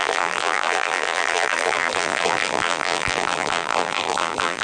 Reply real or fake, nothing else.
fake